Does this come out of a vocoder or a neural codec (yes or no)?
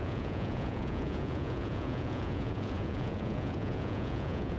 yes